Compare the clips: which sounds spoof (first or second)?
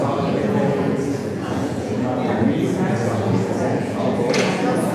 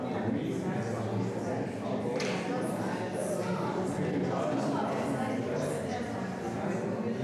first